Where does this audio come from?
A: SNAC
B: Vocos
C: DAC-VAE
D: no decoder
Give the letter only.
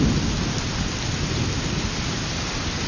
D